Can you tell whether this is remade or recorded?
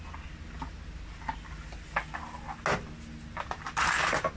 recorded